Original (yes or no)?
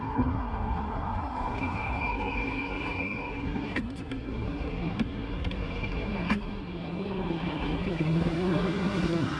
no